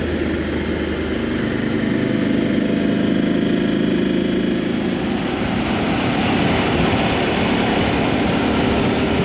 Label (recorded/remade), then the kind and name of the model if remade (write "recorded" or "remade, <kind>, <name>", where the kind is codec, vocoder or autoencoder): recorded